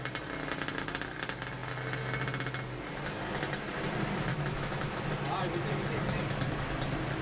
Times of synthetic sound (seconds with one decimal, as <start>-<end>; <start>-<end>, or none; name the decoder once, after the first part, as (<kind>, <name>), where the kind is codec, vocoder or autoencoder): 4.3-5.0 (autoencoder, DAC-VAE)